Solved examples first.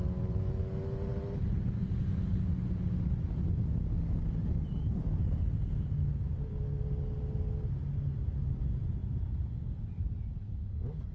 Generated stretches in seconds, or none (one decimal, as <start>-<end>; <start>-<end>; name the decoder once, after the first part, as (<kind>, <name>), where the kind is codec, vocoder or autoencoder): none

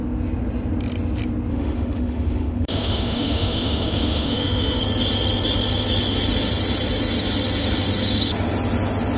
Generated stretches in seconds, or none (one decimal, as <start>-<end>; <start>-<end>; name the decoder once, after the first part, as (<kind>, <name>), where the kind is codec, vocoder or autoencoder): 1.5-4.8 (autoencoder, DAC-VAE)

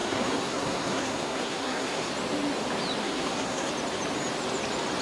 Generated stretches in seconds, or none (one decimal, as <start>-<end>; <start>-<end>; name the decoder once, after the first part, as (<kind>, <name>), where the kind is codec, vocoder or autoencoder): 0.0-2.1 (codec, SNAC); 3.0-3.7

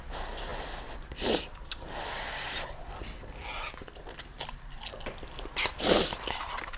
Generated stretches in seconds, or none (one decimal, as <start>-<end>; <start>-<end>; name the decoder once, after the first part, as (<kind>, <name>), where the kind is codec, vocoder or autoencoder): none

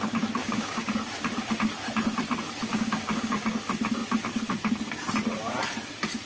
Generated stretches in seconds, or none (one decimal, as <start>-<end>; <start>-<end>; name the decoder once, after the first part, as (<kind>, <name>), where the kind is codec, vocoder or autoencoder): 0.4-0.9 (codec, DAC); 2.7-3.6

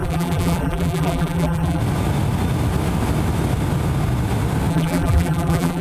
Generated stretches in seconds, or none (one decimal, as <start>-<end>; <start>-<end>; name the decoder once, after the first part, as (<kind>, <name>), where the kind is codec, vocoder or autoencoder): 0.0-1.8 (vocoder, BigVGAN v2); 4.7-5.8